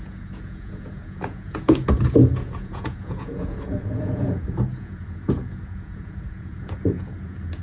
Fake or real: fake